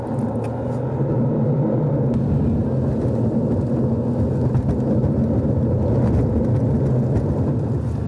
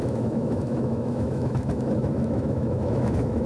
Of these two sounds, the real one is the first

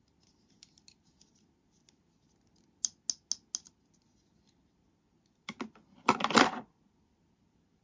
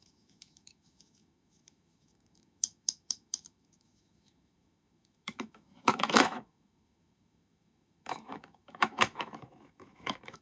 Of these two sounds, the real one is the first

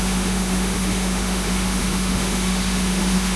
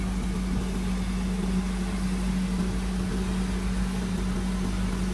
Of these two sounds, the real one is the second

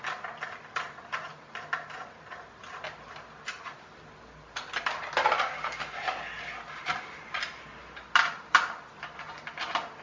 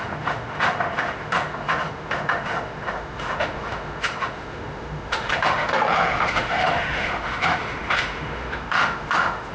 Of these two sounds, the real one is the first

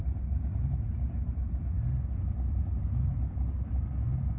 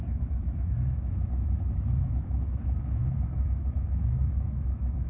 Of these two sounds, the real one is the first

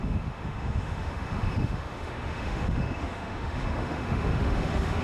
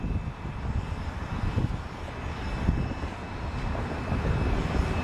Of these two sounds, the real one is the second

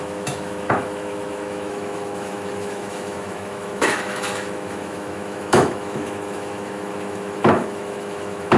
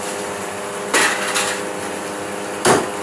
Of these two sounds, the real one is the second